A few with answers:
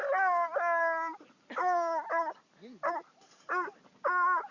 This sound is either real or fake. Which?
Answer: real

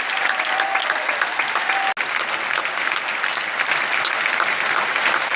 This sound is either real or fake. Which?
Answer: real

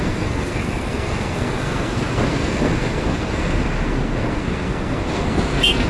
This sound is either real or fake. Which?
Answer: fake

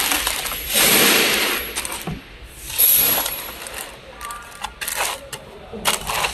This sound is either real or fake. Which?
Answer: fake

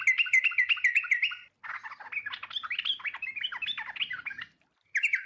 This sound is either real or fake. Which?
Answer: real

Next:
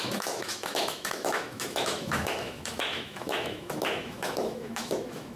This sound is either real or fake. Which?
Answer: fake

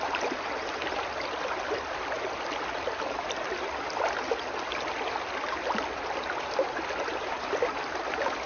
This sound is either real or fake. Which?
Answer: real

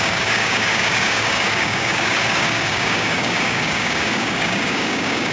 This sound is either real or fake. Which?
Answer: fake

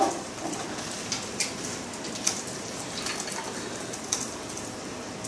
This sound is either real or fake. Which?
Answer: real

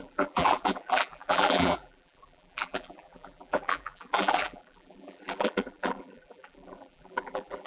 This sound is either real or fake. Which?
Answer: fake